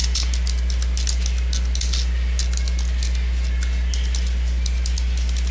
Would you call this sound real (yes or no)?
yes